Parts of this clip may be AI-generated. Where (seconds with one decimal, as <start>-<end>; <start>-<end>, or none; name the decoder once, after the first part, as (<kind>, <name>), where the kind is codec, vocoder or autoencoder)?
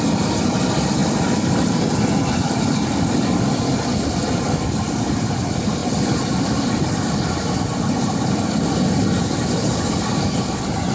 none